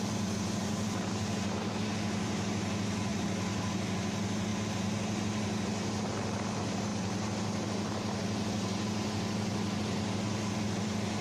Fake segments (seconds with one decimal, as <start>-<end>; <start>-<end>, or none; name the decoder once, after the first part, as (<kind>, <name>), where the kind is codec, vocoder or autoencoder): none